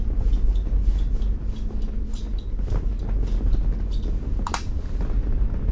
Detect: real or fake real